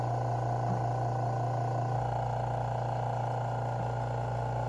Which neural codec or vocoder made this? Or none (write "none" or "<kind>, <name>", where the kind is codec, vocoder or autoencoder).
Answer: none